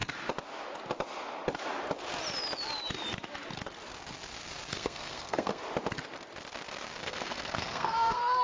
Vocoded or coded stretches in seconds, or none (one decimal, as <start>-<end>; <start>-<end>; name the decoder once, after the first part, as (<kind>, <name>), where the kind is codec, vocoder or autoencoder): 4.7-5.6 (codec, SNAC); 7.0-8.4